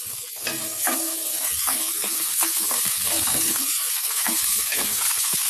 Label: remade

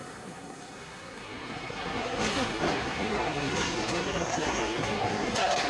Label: remade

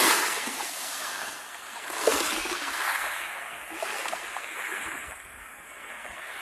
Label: remade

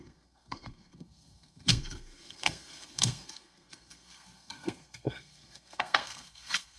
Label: remade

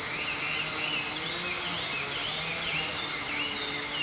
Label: recorded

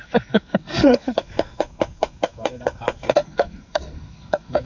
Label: remade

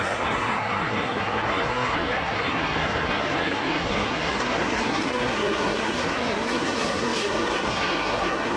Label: remade